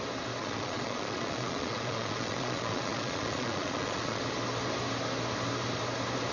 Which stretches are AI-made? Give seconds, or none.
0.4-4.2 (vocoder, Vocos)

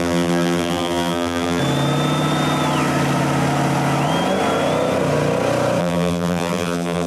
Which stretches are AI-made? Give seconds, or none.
0.0-1.6 (vocoder, BigVGAN v2); 5.8-7.1